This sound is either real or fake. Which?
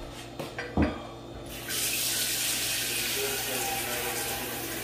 real